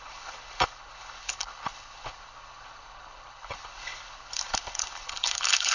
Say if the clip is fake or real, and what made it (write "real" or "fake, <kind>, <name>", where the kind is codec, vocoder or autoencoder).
fake, codec, HILCodec